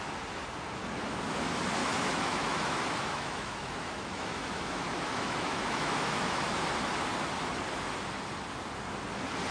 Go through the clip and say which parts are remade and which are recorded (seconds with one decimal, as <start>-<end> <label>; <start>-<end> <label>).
0.0-1.8 recorded; 1.8-6.6 remade; 6.6-9.5 recorded